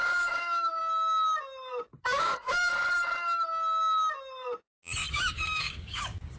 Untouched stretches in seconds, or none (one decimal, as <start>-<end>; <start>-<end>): 0.8-2.0; 2.7-5.1